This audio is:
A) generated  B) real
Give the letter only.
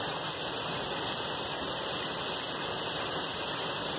B